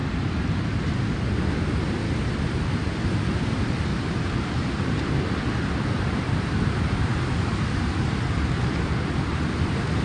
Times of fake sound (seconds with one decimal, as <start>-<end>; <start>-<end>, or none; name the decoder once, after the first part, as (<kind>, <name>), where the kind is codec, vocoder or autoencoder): 1.5-3.9 (vocoder, BigVGAN v2); 4.9-10.0